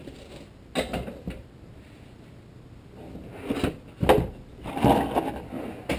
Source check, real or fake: real